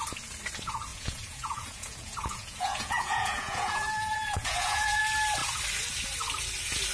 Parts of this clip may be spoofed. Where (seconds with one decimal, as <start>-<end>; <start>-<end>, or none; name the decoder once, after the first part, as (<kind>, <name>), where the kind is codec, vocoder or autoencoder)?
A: 0.9-5.0 (vocoder, Vocos)

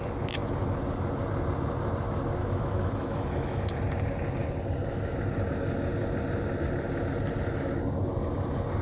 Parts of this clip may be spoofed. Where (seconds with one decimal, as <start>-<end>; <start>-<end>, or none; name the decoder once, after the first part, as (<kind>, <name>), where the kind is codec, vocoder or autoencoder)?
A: 2.4-3.6 (autoencoder, DAC-VAE)